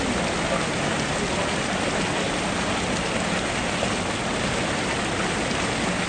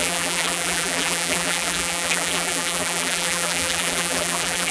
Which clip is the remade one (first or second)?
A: second